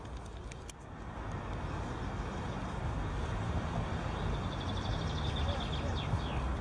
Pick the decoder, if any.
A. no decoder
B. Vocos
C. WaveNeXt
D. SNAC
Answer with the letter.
A